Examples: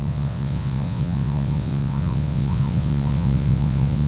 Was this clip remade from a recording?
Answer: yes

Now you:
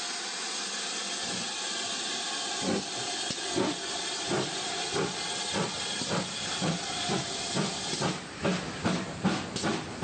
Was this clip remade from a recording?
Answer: no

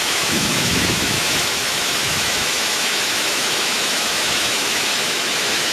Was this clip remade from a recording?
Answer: yes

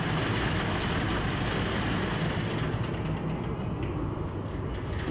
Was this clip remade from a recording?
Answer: no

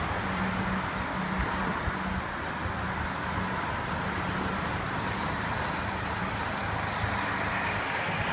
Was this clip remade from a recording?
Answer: no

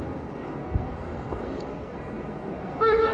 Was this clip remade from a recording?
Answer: yes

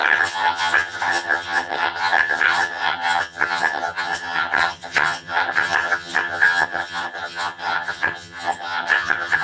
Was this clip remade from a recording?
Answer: yes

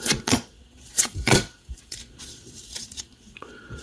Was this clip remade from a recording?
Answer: yes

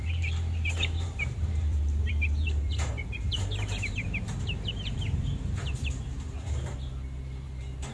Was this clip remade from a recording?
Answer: yes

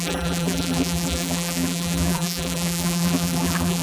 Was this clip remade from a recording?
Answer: yes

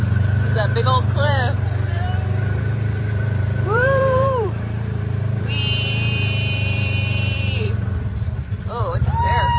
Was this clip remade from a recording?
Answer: yes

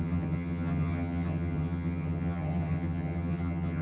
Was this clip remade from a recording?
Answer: yes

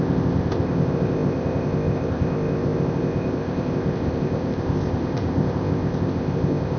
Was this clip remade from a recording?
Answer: yes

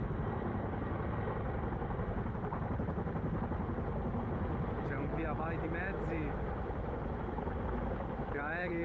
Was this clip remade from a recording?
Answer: no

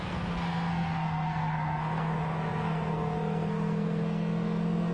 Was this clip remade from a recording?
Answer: yes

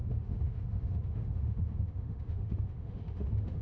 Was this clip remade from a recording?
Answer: yes